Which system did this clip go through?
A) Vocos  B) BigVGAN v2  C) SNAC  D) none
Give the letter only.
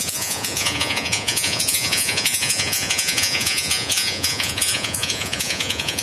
A